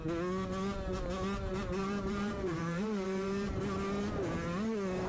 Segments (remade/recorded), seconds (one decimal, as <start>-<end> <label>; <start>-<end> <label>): 0.0-1.8 recorded; 1.8-3.6 remade; 3.6-5.1 recorded